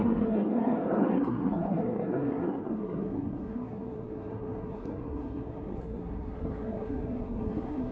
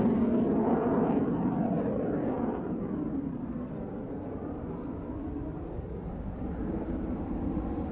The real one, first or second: second